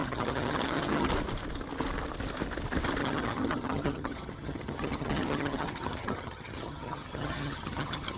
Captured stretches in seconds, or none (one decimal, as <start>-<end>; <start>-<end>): 1.1-3.0